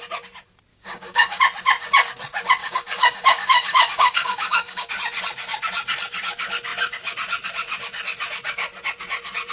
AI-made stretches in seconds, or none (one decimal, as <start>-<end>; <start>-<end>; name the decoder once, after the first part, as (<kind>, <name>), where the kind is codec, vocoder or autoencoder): 0.7-1.4 (codec, DAC); 2.6-4.9